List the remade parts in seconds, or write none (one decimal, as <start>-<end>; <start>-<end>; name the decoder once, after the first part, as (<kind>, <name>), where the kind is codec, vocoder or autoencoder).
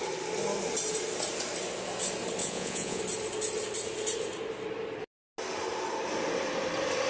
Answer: 2.4-3.0 (vocoder, Vocos)